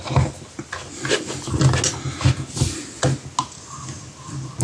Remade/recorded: recorded